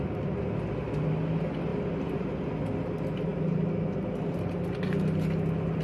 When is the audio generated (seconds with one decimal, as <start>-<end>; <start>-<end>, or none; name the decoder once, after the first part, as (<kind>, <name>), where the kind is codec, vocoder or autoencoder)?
1.7-2.5 (vocoder, BigVGAN v2)